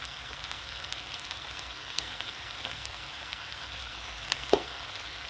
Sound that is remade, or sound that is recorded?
remade